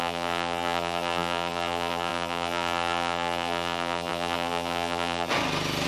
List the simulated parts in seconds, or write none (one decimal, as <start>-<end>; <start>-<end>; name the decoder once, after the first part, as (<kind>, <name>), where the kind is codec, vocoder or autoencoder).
0.0-5.3 (vocoder, BigVGAN v2)